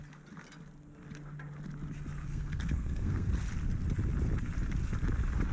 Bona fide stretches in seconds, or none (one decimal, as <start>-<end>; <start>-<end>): 0.0-2.3; 3.3-5.5